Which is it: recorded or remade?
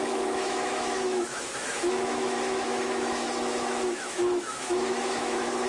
remade